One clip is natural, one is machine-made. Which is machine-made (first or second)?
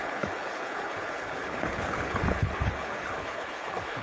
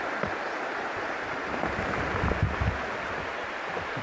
first